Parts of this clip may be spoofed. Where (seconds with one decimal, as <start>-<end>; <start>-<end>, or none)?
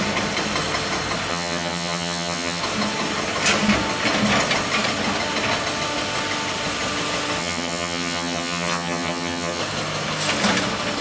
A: 1.3-2.6; 7.4-9.6